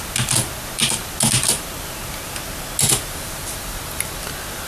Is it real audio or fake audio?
real